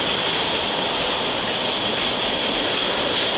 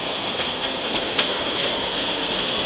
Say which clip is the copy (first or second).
second